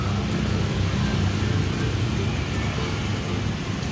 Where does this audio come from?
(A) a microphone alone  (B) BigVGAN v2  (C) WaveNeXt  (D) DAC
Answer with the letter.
A